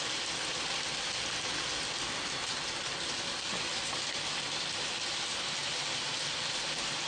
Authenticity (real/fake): real